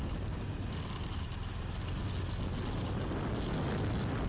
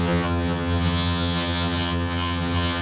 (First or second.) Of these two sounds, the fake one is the second